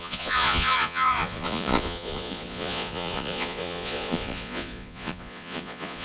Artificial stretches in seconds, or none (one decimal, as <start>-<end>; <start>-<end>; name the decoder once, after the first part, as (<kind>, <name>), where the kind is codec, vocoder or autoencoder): 0.0-6.0 (vocoder, Vocos)

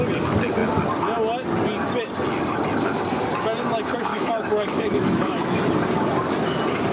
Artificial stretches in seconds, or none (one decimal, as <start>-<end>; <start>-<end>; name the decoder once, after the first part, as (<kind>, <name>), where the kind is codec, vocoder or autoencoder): 4.1-5.7 (autoencoder, DAC-VAE)

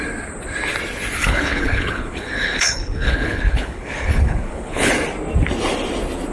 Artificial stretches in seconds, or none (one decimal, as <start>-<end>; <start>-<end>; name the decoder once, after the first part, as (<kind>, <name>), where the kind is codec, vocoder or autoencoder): 1.2-4.9 (codec, HILCodec)

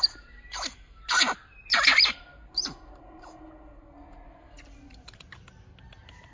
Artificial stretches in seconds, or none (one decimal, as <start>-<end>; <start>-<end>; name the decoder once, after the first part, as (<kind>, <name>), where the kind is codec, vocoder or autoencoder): none

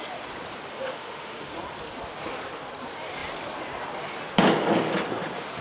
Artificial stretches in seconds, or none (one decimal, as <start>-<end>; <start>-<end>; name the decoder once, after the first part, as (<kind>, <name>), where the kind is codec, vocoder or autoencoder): 0.7-1.5 (autoencoder, DAC-VAE)

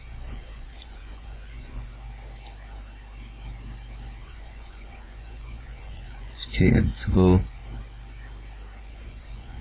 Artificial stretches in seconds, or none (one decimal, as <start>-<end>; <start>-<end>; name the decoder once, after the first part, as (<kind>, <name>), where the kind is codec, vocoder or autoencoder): 0.0-1.9 (vocoder, Vocos); 4.2-7.6; 8.8-9.6

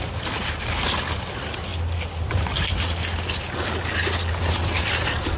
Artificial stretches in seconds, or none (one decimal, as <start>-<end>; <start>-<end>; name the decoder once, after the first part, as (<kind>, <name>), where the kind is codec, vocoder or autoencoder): 0.0-1.7 (vocoder, BigVGAN v2); 4.9-5.4

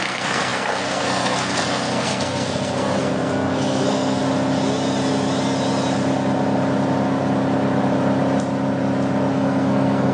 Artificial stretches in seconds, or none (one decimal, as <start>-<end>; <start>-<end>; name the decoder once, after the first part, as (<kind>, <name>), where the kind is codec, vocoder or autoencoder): 0.0-4.2 (codec, SNAC); 9.3-10.1